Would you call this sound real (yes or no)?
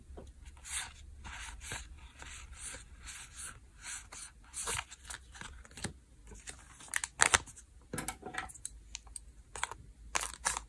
yes